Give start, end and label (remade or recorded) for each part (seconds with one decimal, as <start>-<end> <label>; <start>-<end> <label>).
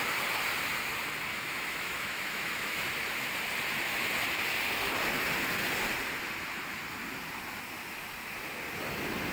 0.0-1.3 recorded; 1.3-2.9 remade; 2.9-9.3 recorded